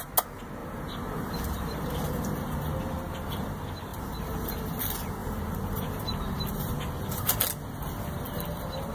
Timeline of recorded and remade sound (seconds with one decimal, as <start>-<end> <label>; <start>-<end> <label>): 0.0-0.6 recorded; 0.6-2.8 remade; 2.8-3.9 recorded; 3.9-4.8 remade; 4.8-5.2 recorded; 5.2-7.4 remade; 7.4-8.9 recorded